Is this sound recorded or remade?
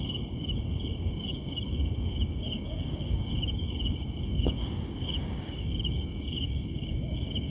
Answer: remade